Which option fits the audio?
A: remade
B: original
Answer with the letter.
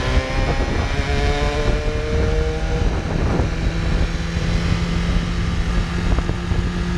B